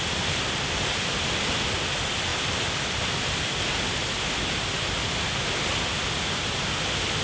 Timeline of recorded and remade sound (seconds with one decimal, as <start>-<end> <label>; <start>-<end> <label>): 0.0-7.2 recorded